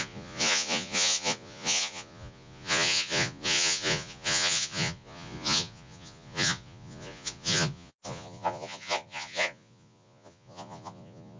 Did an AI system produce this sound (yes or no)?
yes